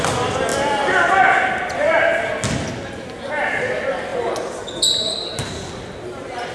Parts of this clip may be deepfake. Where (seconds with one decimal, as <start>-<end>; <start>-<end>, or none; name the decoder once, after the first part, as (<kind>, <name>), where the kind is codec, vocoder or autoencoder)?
none